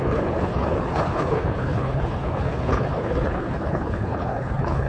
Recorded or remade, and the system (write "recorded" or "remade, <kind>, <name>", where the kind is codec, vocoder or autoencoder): remade, codec, HILCodec